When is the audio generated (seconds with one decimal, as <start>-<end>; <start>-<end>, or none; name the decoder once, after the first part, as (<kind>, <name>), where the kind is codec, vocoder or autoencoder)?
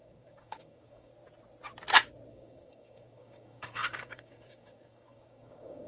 0.0-1.1 (codec, DAC); 2.3-5.9